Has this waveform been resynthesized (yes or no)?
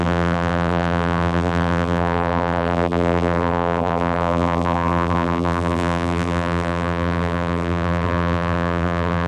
yes